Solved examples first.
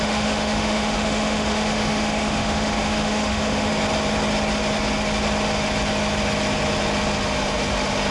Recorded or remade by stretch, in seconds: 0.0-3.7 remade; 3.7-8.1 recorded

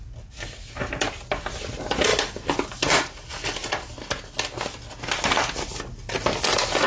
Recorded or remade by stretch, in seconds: 0.0-6.9 recorded

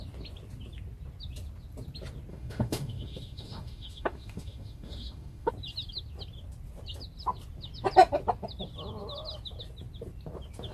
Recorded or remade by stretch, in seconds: 0.0-2.3 recorded; 2.3-5.5 remade; 5.5-10.7 recorded

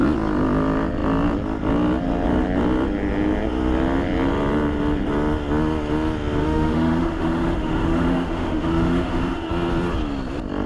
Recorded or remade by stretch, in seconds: 0.0-6.4 recorded; 6.4-9.5 remade; 9.5-10.7 recorded

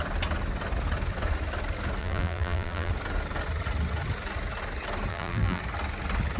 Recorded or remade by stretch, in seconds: 0.0-2.0 recorded; 2.0-2.9 remade; 2.9-5.1 recorded; 5.1-5.6 remade; 5.6-6.4 recorded

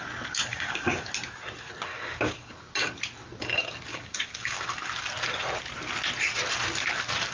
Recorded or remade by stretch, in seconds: 0.0-0.5 recorded; 0.5-1.1 remade; 1.1-1.9 recorded; 1.9-2.5 remade; 2.5-3.9 recorded; 3.9-4.7 remade; 4.7-7.3 recorded